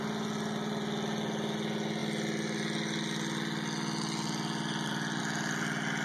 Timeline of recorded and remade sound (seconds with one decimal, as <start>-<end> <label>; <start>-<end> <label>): 0.0-6.0 recorded